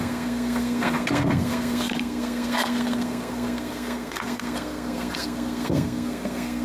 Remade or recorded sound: remade